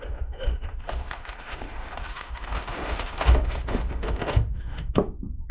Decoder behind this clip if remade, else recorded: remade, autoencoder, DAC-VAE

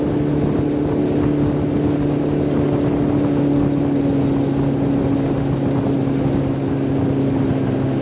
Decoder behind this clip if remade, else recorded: recorded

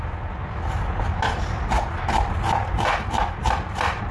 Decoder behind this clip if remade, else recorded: recorded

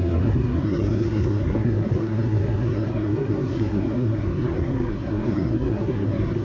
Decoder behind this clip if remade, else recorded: remade, codec, SNAC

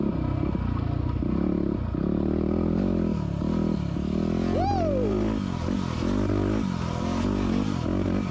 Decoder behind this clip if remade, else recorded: recorded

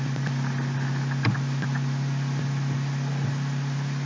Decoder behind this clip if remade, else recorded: recorded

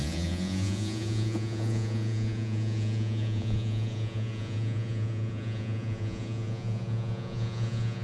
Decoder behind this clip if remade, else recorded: remade, vocoder, Vocos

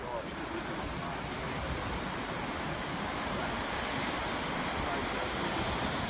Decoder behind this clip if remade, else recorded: recorded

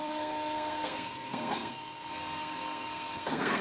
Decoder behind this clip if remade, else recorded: remade, codec, SNAC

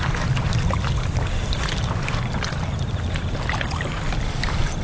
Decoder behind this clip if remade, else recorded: recorded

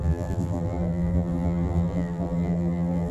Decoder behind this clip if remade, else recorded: remade, vocoder, BigVGAN v2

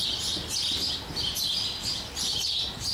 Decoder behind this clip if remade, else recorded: recorded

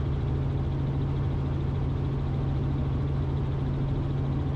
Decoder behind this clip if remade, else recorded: recorded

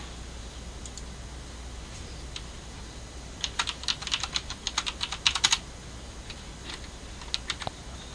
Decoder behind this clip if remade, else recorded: recorded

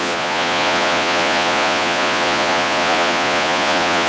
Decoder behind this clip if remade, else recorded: remade, vocoder, Vocos